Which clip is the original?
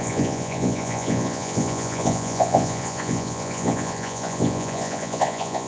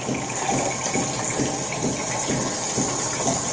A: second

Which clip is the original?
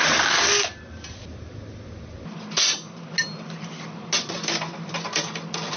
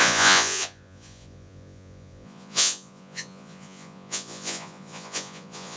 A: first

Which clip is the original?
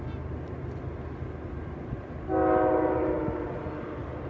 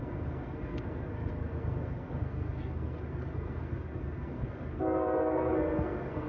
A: first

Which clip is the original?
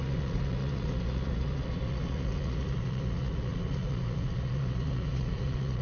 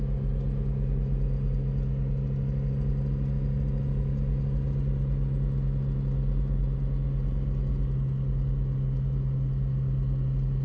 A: second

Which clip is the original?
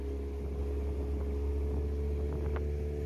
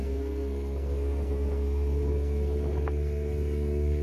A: first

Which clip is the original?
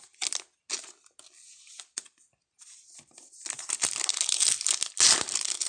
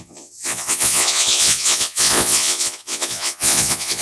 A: first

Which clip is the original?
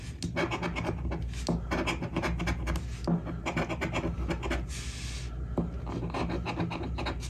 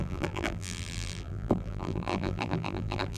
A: first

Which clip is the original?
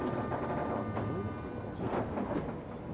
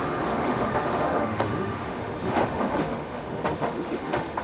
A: first